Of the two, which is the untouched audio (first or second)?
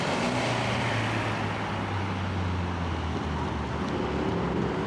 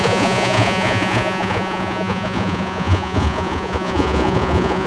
first